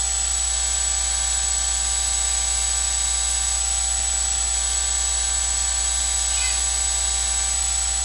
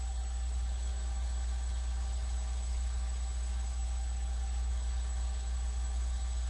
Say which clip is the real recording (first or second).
first